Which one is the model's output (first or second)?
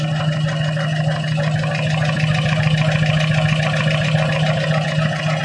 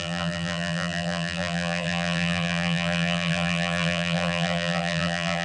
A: second